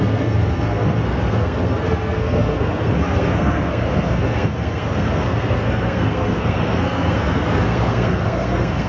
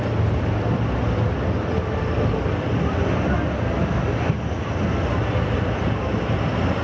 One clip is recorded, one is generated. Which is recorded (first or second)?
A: second